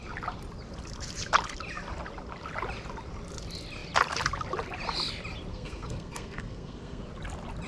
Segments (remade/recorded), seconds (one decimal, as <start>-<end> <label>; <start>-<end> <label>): 0.0-5.5 recorded; 5.5-7.0 remade; 7.0-7.7 recorded